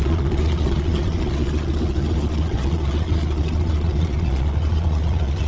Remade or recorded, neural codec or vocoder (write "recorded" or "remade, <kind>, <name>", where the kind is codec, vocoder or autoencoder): remade, vocoder, Vocos